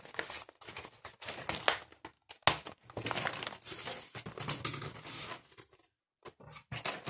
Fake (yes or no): no